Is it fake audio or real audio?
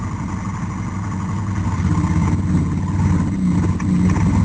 real